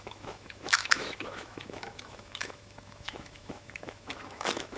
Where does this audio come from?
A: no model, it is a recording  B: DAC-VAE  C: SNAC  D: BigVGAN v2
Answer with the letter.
B